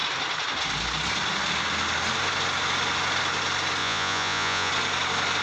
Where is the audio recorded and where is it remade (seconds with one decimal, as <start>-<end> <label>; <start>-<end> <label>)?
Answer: 0.0-3.8 recorded; 3.8-4.7 remade; 4.7-5.4 recorded